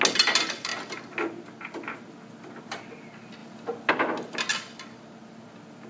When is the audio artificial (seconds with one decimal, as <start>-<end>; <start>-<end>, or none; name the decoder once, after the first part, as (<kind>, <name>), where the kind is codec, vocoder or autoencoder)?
none